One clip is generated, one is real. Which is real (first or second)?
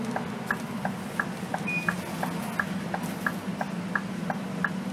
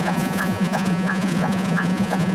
first